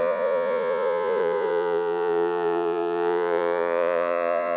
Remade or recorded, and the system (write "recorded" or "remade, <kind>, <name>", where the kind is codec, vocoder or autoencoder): remade, vocoder, Vocos